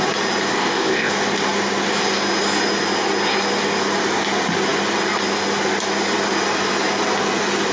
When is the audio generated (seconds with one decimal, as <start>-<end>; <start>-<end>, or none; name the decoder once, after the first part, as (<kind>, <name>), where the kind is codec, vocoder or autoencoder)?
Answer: 0.5-1.1 (codec, ZipCodec)